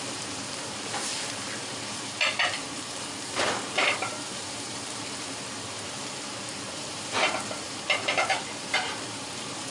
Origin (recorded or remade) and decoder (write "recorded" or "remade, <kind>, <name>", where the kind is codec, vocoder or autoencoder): remade, vocoder, BigVGAN v2